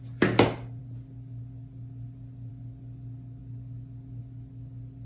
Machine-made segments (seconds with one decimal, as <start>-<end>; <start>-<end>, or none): none